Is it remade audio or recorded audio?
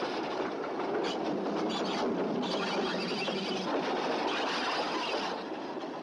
recorded